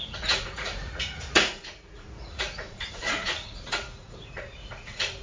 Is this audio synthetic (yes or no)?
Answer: yes